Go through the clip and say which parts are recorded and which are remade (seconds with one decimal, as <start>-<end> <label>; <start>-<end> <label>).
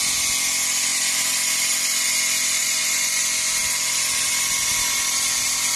0.0-2.6 recorded; 2.6-3.2 remade; 3.2-5.8 recorded